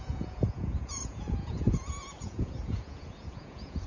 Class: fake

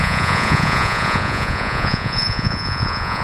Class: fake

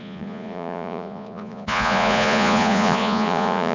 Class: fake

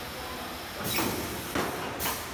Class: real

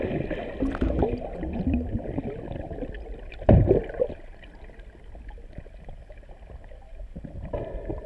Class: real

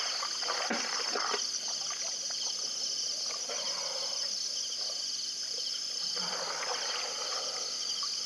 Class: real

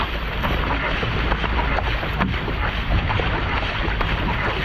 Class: real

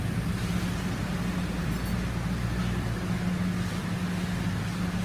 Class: real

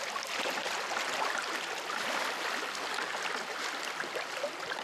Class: real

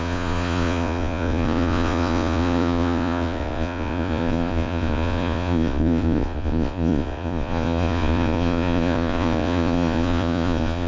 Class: fake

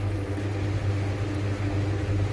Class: real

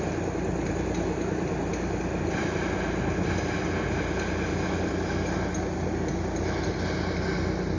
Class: real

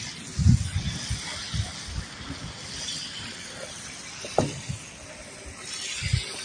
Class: real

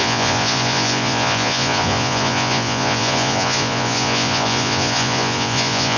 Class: fake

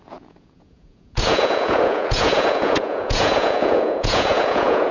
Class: fake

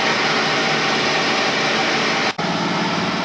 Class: real